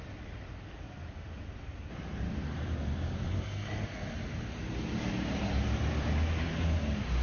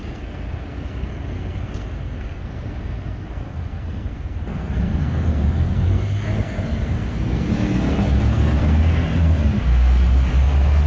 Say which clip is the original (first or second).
first